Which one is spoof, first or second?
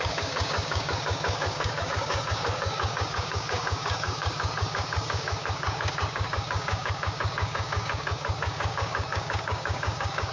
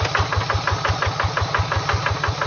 first